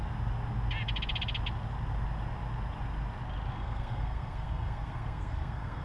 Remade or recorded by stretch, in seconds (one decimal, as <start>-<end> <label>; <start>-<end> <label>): 0.0-3.5 recorded; 3.5-5.8 remade